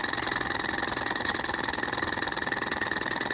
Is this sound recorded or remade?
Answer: recorded